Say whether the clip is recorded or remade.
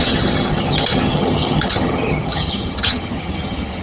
remade